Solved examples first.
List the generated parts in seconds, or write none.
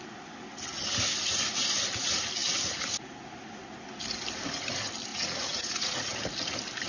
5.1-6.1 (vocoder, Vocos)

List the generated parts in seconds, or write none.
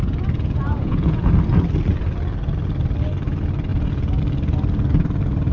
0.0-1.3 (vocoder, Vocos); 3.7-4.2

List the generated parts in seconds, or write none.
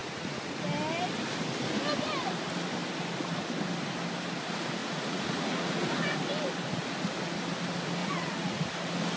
0.0-0.6 (vocoder, Vocos); 4.8-5.9; 8.0-8.6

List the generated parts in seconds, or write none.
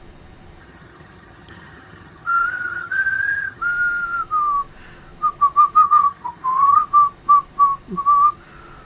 0.6-3.6 (vocoder, HiFi-GAN); 5.8-6.8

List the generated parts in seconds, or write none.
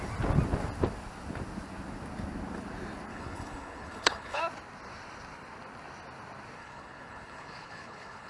3.1-4.4 (codec, HILCodec); 6.6-8.3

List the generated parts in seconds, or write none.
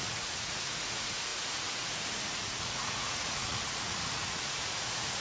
0.0-5.2 (vocoder, Vocos)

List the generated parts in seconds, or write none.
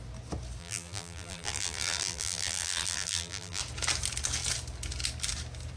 0.6-3.6 (vocoder, BigVGAN v2)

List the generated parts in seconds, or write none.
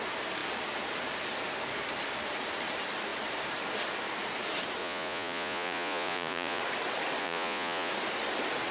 4.8-6.6 (vocoder, Vocos); 7.2-7.9